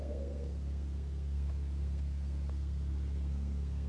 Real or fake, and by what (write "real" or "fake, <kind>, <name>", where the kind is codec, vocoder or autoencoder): fake, codec, SNAC